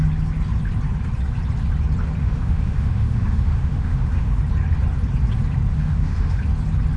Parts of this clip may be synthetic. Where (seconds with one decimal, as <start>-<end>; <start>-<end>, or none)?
2.2-4.4; 5.7-6.4